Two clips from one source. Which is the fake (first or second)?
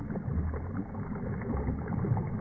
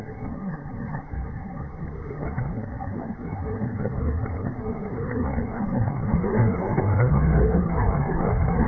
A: second